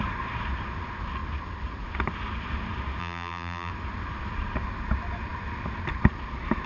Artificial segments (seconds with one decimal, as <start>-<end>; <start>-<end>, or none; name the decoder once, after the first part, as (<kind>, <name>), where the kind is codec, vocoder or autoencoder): 3.0-3.7 (vocoder, BigVGAN v2)